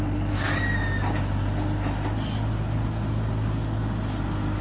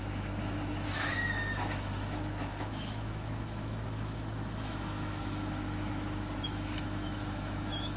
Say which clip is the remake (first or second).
second